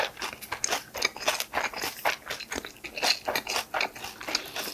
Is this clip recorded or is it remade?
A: recorded